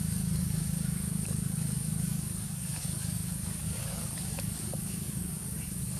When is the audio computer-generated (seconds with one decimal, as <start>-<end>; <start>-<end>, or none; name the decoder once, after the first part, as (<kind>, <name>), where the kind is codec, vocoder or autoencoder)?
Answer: 0.0-6.0 (codec, DAC)